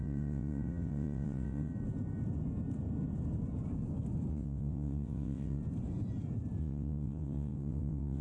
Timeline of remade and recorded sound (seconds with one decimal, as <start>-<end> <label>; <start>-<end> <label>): 0.0-1.7 remade; 1.7-4.3 recorded; 4.3-5.6 remade; 5.6-6.6 recorded; 6.6-8.2 remade